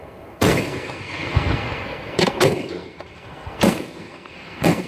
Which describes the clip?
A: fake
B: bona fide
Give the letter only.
A